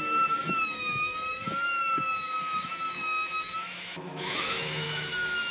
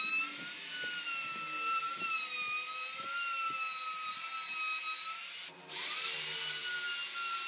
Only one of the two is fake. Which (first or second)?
first